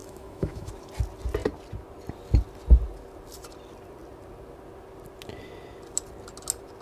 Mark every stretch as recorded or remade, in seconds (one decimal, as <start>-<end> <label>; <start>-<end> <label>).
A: 0.0-0.7 remade; 0.7-6.8 recorded